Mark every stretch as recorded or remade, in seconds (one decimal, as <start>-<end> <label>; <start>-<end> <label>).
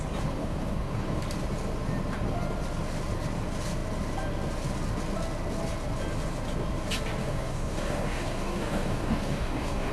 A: 0.0-0.4 recorded; 0.4-1.2 remade; 1.2-7.2 recorded; 7.2-9.9 remade